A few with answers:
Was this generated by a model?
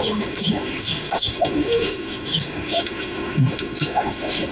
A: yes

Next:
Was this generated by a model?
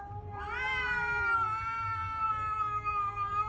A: yes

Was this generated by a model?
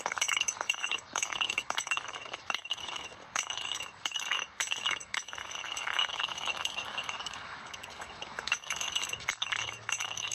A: yes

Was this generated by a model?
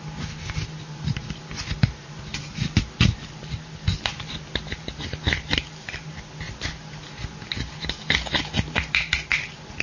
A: no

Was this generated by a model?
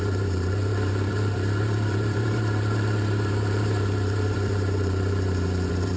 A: yes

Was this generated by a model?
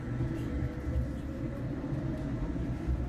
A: no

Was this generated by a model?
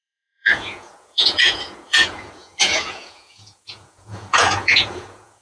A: yes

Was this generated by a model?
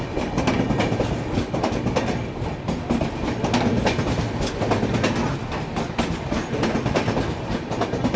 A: no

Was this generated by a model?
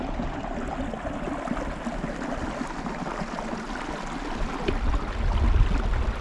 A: no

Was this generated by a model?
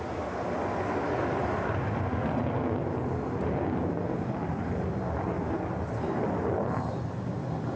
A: no